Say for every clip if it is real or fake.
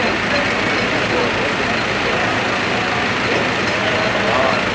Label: real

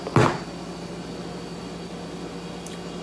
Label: real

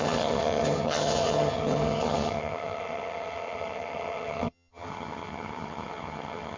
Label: fake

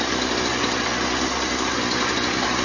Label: real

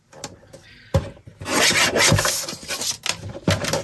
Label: real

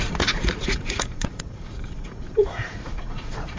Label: fake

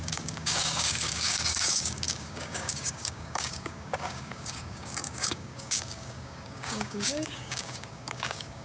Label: fake